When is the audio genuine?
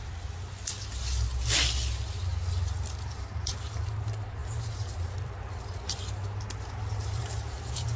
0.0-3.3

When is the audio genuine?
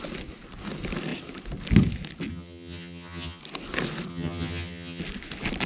0.0-2.3; 3.4-4.1; 5.0-5.7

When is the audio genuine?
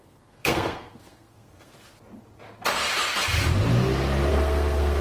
1.7-4.3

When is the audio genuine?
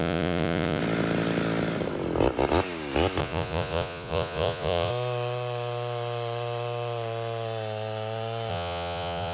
0.8-3.2; 4.9-8.5